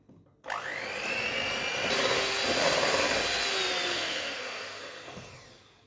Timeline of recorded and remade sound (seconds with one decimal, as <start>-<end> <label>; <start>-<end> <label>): 0.0-3.9 recorded; 3.9-5.3 remade; 5.3-5.9 recorded